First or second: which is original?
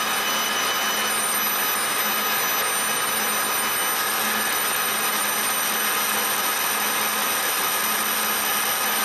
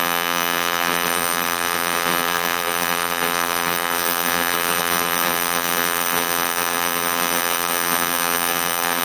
first